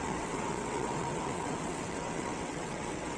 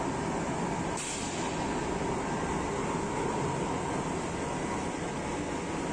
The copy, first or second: first